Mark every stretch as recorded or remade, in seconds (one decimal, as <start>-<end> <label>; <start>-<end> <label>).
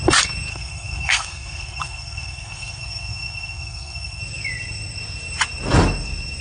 0.0-0.5 recorded; 0.5-4.2 remade; 4.2-6.4 recorded